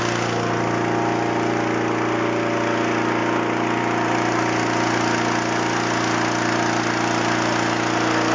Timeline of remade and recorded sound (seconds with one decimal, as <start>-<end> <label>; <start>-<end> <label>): 0.0-8.3 recorded